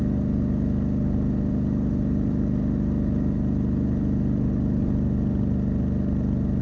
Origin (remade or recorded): recorded